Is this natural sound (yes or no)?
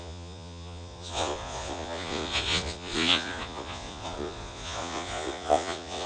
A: no